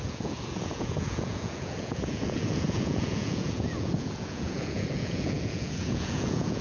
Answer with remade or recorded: remade